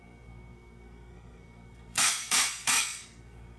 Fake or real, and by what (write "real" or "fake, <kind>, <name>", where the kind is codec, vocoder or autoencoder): fake, codec, SNAC